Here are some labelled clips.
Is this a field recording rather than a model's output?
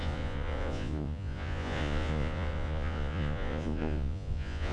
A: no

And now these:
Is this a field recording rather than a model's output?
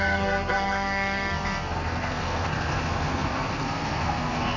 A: no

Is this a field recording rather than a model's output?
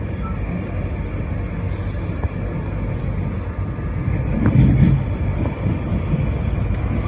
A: yes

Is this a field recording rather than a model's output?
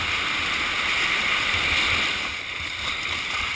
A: yes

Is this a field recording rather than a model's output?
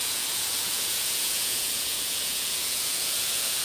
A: no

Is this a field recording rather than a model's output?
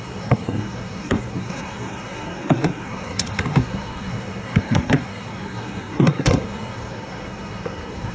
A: no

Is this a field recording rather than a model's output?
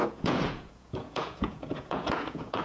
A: no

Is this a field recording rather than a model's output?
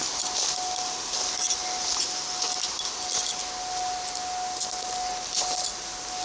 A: yes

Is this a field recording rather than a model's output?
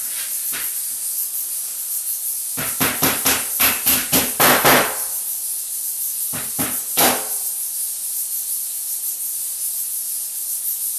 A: yes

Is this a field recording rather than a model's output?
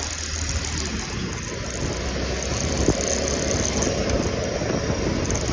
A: yes